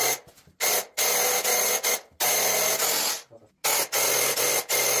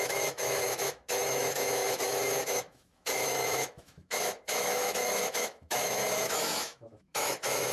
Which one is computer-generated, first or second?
second